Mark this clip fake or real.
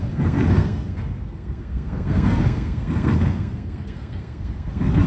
fake